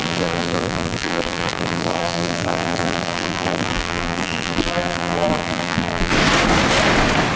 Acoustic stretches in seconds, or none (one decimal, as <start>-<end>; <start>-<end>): 6.1-7.4